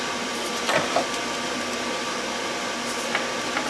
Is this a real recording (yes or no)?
yes